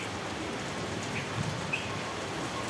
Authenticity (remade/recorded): recorded